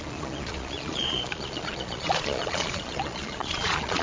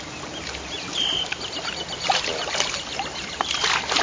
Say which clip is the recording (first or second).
second